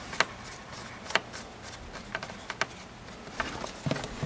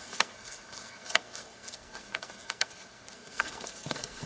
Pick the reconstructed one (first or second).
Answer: second